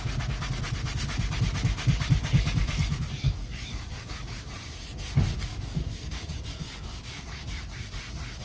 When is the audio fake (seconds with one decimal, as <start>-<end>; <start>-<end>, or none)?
2.2-4.5; 5.5-7.6